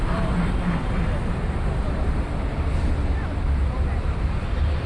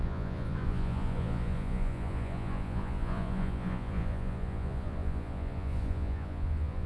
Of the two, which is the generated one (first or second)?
second